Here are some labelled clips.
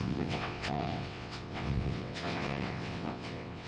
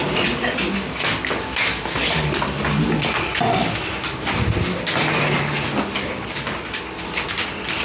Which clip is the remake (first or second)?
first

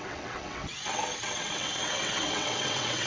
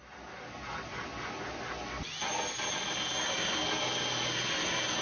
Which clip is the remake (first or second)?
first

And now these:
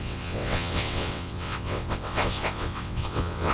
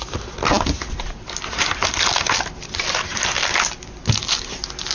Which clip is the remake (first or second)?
first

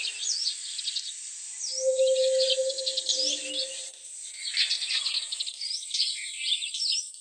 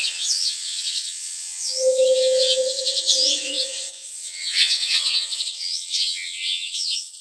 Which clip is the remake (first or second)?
second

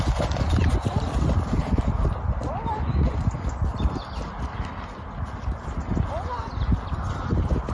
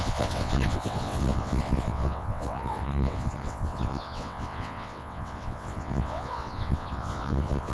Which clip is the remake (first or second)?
second